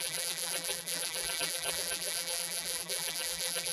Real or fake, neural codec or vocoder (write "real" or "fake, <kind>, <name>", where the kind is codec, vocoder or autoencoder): fake, vocoder, BigVGAN v2